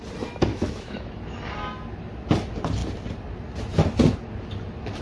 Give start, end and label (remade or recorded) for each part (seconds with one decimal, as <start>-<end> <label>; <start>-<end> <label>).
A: 0.0-0.5 recorded; 0.5-1.1 remade; 1.1-5.0 recorded